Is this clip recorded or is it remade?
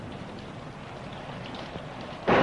recorded